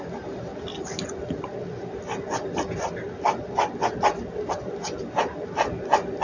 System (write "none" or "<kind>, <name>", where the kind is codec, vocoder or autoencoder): none